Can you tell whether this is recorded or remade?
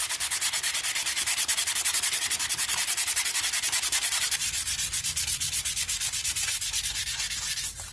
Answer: recorded